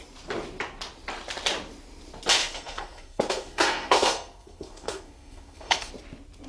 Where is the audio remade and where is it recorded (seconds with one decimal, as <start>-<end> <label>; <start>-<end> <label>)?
0.0-2.4 recorded; 2.4-5.9 remade; 5.9-6.5 recorded

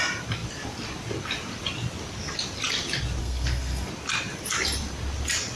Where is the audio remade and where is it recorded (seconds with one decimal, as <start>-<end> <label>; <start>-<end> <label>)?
0.0-3.2 recorded; 3.2-3.9 remade; 3.9-5.6 recorded

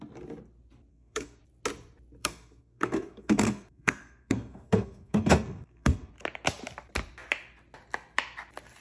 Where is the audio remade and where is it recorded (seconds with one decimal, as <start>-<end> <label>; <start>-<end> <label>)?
0.0-0.9 recorded; 0.9-1.4 remade; 1.4-2.2 recorded; 2.2-6.1 remade; 6.1-8.8 recorded

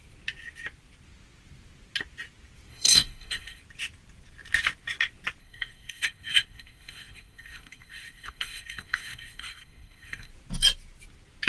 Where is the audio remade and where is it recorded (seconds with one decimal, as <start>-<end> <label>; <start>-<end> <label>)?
0.0-2.7 recorded; 2.7-3.6 remade; 3.6-5.4 recorded; 5.4-10.3 remade; 10.3-11.5 recorded